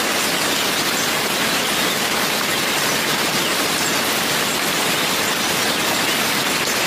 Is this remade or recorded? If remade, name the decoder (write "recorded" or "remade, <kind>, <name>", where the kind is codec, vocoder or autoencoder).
recorded